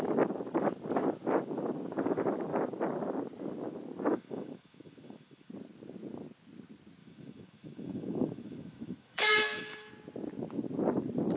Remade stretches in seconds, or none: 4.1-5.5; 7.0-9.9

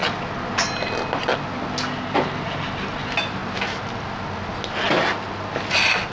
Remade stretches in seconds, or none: none

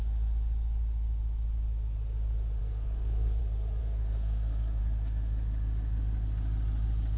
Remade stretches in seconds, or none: 2.6-3.4; 3.8-4.8

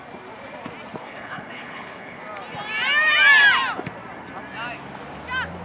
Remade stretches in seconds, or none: 1.0-2.2

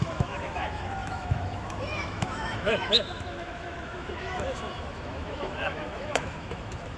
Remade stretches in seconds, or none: 0.0-7.0

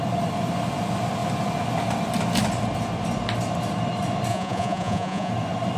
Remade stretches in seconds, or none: 4.3-5.3

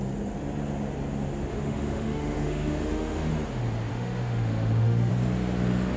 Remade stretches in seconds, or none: 1.5-3.3; 3.9-5.1

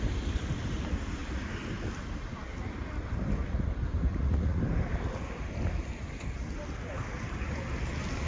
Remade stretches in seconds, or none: 4.1-4.6